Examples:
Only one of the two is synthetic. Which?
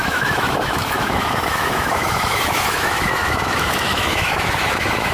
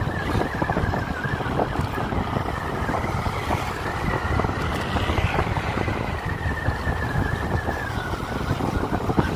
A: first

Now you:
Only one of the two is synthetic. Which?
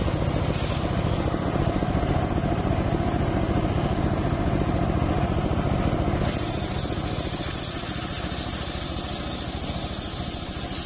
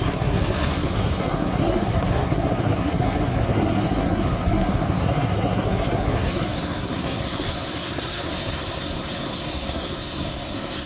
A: second